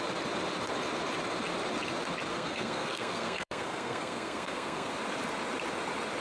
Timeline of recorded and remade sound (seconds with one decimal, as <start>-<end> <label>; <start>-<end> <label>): 0.0-2.3 recorded; 2.3-4.9 remade; 4.9-6.2 recorded